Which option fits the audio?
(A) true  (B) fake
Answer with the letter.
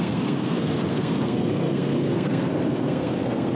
B